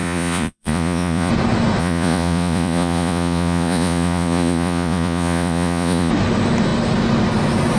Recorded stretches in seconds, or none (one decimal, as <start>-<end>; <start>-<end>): 1.3-1.8; 6.1-7.8